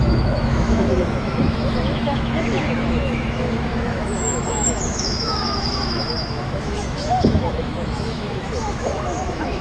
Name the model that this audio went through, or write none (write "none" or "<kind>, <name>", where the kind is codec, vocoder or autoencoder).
autoencoder, DAC-VAE